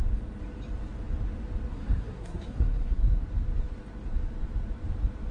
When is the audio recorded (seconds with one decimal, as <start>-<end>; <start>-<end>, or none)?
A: 0.0-1.7; 3.0-5.3